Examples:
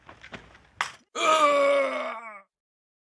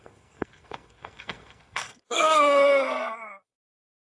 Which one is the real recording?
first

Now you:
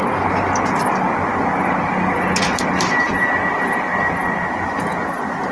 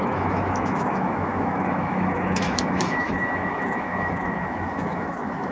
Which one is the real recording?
first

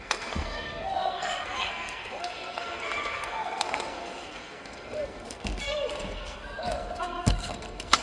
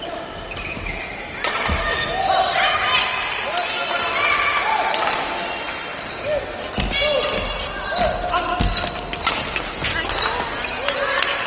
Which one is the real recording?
second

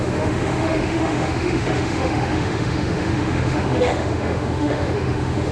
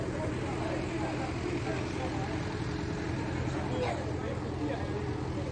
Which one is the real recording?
second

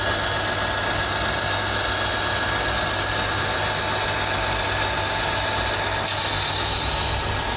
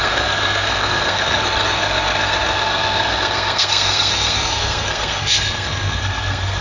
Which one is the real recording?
first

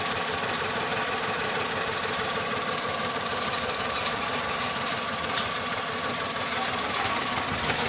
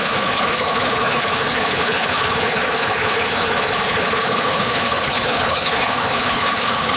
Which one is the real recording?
first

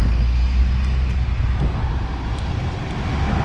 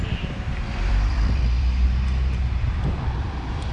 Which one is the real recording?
first